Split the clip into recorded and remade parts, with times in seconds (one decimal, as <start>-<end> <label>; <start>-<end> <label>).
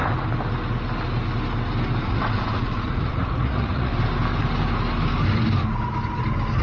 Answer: 0.0-2.0 recorded; 2.0-3.9 remade; 3.9-6.6 recorded